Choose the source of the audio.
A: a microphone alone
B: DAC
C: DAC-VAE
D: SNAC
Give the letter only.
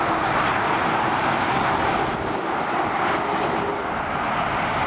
A